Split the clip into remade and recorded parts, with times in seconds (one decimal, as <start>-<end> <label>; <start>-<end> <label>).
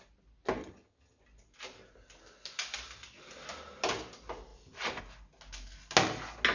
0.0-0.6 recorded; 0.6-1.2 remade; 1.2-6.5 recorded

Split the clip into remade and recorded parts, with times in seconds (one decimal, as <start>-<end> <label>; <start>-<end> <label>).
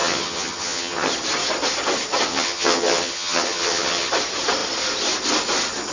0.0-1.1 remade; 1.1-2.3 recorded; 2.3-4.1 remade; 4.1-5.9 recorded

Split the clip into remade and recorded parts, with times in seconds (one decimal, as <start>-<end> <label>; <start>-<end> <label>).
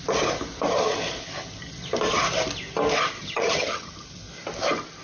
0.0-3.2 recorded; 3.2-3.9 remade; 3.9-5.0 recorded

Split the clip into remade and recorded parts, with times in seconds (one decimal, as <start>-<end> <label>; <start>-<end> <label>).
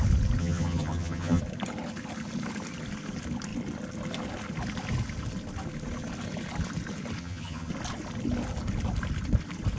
0.0-0.4 recorded; 0.4-1.4 remade; 1.4-7.2 recorded; 7.2-7.7 remade; 7.7-9.8 recorded